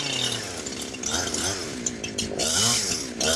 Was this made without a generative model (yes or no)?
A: yes